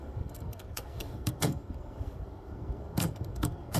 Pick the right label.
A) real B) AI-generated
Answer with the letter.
B